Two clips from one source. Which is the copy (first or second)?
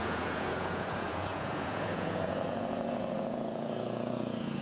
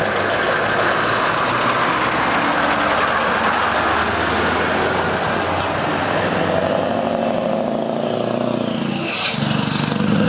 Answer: first